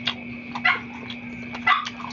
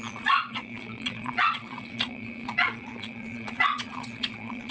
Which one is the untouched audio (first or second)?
first